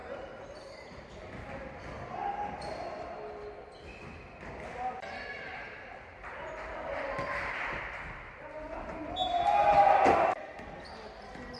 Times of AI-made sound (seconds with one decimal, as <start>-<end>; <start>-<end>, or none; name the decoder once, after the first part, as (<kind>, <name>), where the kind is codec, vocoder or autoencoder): 0.0-1.1 (vocoder, BigVGAN v2); 5.5-7.8

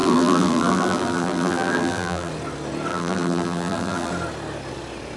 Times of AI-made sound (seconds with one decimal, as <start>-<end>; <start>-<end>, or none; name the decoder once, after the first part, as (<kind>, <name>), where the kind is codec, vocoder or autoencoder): 0.0-2.3 (vocoder, BigVGAN v2); 2.9-4.1

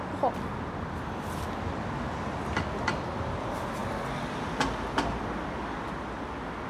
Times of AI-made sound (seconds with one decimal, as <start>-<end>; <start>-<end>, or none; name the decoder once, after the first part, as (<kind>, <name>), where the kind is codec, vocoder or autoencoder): none